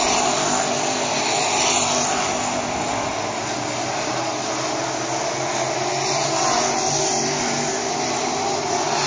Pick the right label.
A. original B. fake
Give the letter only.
A